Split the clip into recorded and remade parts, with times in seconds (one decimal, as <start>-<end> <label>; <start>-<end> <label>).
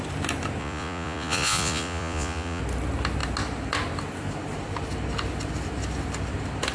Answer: 0.0-0.6 recorded; 0.6-2.6 remade; 2.6-6.7 recorded